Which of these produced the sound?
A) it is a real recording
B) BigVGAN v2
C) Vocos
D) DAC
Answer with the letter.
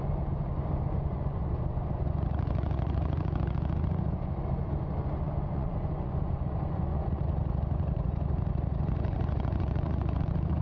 C